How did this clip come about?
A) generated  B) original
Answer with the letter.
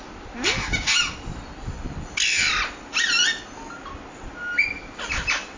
B